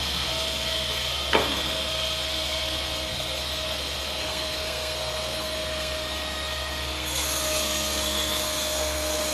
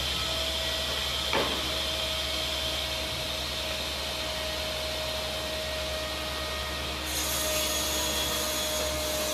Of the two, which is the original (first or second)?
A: second